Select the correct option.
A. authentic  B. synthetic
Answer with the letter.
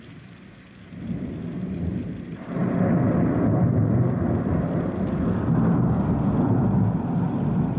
A